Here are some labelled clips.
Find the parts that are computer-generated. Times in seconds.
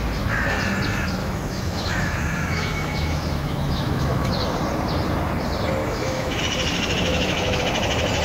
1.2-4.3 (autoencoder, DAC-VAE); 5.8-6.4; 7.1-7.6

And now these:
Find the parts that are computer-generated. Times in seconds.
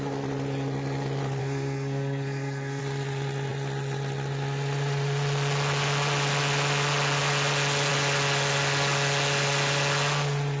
1.4-2.8 (codec, SNAC)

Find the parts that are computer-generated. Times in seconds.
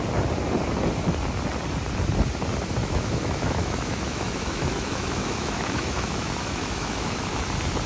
2.8-7.4 (autoencoder, DAC-VAE)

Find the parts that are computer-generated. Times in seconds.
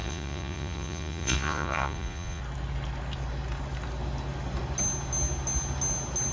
0.0-2.4 (vocoder, Vocos)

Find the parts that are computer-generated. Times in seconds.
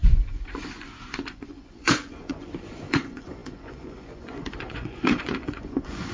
0.0-6.1 (vocoder, Vocos)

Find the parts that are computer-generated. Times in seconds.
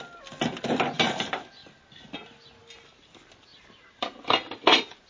3.5-4.2 (vocoder, BigVGAN v2)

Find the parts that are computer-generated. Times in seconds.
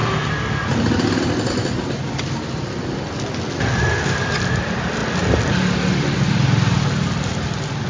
none